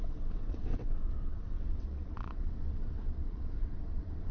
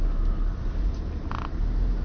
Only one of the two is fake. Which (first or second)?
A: first